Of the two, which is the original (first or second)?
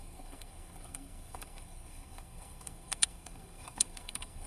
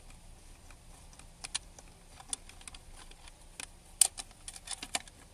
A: second